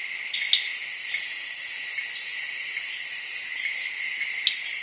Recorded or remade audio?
recorded